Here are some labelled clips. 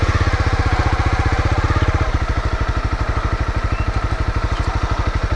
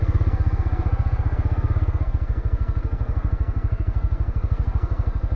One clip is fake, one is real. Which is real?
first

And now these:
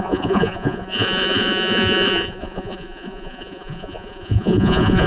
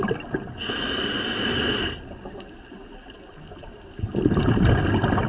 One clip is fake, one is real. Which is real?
second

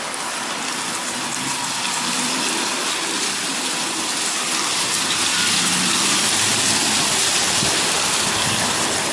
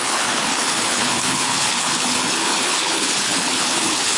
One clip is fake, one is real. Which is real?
first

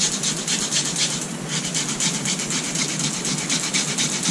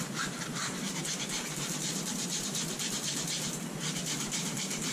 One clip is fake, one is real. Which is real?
first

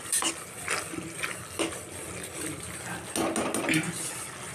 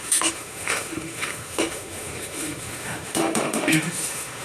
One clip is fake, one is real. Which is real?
first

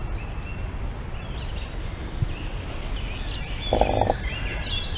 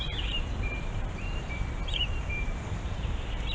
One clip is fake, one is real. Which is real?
first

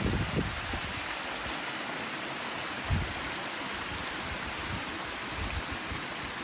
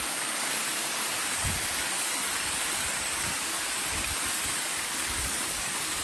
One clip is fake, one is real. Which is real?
first